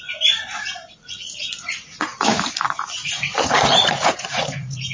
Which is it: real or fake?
fake